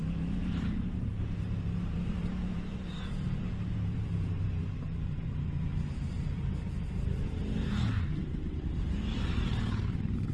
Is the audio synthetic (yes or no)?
yes